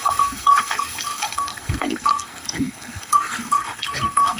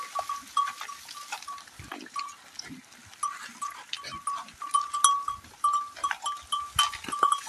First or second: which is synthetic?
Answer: first